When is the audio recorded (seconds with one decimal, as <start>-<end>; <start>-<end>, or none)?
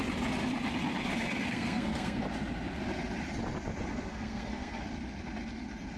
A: 0.0-1.5; 2.2-3.9; 4.8-6.0